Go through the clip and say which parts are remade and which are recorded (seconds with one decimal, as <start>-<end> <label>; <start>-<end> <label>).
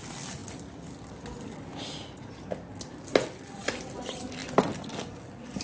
0.0-5.6 recorded